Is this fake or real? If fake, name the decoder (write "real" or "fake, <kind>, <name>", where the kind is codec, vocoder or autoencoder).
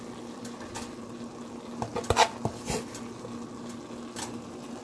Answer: real